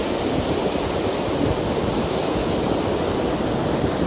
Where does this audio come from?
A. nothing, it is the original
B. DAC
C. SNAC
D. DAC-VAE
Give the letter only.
A